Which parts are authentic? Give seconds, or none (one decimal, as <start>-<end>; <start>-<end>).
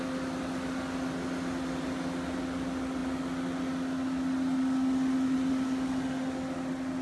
0.0-7.0